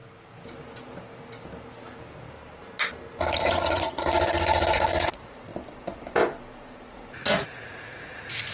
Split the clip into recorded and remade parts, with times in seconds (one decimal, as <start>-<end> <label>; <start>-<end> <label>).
0.0-3.2 recorded; 3.2-5.5 remade; 5.5-6.9 recorded; 6.9-8.5 remade

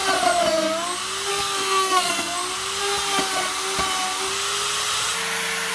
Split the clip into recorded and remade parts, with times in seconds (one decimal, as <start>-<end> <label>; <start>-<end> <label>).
0.0-1.3 recorded; 1.3-2.4 remade; 2.4-5.7 recorded

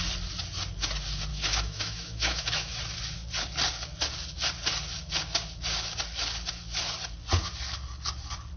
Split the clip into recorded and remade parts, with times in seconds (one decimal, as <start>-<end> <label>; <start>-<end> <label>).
0.0-1.3 recorded; 1.3-2.8 remade; 2.8-8.6 recorded

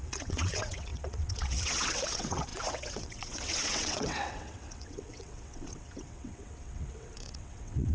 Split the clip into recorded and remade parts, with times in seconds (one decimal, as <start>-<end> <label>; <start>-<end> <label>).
0.0-7.9 remade

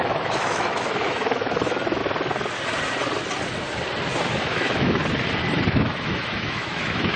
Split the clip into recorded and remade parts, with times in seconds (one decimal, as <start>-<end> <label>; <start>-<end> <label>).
0.0-2.0 remade; 2.0-4.4 recorded; 4.4-5.0 remade; 5.0-5.7 recorded; 5.7-7.2 remade

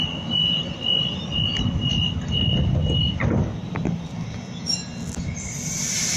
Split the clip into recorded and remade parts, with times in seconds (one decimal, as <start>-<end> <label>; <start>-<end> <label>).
0.0-6.2 recorded

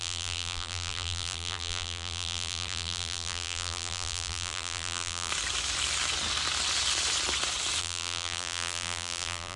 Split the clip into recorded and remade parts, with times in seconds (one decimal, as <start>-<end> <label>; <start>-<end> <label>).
0.0-5.3 remade; 5.3-7.8 recorded; 7.8-9.6 remade